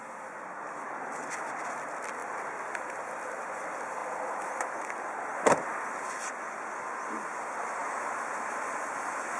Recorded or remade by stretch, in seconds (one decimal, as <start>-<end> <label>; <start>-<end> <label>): 0.0-9.4 recorded